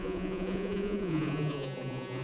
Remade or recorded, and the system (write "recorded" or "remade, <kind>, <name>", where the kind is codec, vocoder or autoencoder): remade, vocoder, Vocos